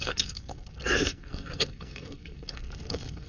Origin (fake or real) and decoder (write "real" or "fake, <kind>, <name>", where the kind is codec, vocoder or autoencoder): fake, codec, SNAC